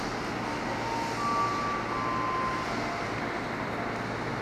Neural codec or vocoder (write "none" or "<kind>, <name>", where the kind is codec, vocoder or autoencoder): none